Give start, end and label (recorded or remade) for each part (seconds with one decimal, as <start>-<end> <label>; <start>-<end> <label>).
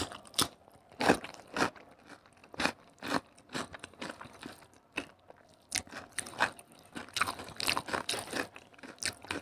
0.0-9.4 recorded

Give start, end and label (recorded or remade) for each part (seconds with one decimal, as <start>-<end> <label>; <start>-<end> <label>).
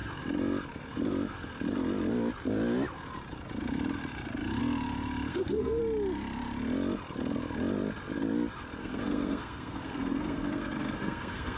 0.0-5.3 recorded; 5.3-5.8 remade; 5.8-8.8 recorded; 8.8-11.6 remade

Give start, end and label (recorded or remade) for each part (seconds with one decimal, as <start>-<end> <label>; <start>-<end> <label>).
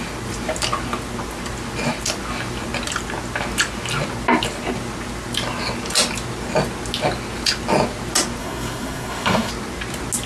0.0-8.4 recorded; 8.4-9.5 remade; 9.5-10.3 recorded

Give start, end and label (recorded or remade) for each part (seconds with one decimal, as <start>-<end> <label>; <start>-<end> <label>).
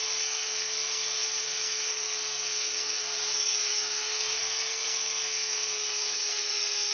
0.0-6.9 remade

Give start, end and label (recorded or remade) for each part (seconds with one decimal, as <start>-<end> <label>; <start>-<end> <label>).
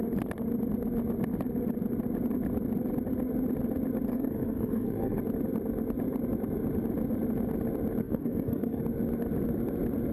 0.0-4.1 recorded; 4.1-5.2 remade; 5.2-8.0 recorded; 8.0-8.8 remade; 8.8-10.1 recorded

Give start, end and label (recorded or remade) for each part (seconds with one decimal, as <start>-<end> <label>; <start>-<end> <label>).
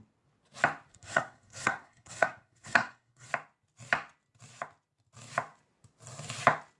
0.0-0.9 recorded; 0.9-3.3 remade; 3.3-6.8 recorded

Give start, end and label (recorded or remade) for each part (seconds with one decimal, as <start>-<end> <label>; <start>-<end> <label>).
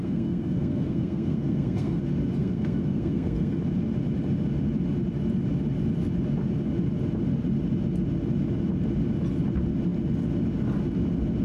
0.0-2.0 remade; 2.0-2.4 recorded; 2.4-3.6 remade; 3.6-11.4 recorded